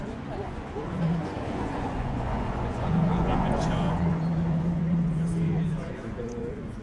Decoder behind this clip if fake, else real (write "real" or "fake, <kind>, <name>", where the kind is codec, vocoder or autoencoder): fake, vocoder, Vocos